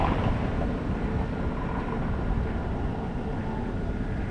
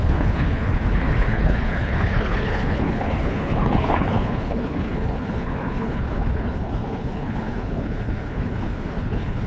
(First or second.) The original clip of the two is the first